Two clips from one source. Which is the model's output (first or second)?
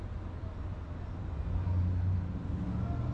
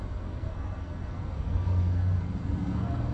second